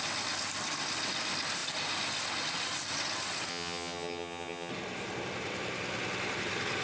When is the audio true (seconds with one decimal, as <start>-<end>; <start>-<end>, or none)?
0.0-3.5; 4.7-6.8